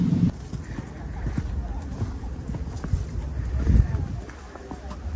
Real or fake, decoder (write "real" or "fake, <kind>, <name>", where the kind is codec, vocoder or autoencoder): real